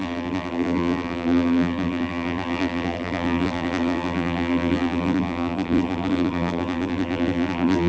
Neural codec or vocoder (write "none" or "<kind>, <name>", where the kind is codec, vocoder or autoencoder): vocoder, BigVGAN v2